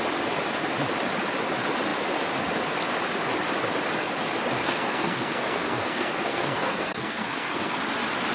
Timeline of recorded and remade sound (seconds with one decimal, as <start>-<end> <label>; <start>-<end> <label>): 0.0-4.6 recorded; 4.6-7.8 remade; 7.8-8.3 recorded